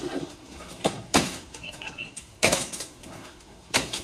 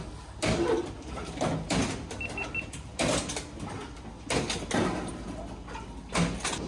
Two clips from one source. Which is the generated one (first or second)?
first